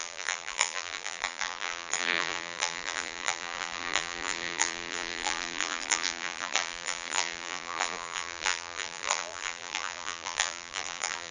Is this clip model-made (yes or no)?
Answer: yes